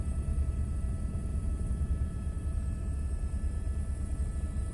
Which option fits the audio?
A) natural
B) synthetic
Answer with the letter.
B